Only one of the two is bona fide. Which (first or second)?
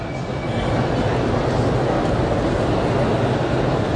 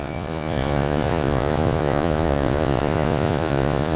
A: first